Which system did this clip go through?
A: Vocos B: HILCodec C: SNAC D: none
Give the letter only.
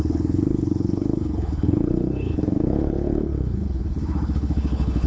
B